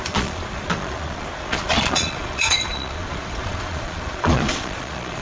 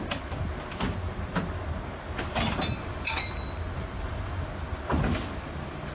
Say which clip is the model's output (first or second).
first